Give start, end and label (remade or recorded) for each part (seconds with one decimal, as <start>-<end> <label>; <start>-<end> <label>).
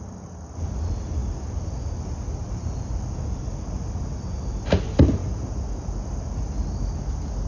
0.0-7.5 recorded